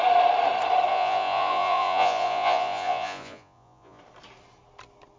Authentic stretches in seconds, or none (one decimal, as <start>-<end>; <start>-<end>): 0.0-0.9; 4.0-5.2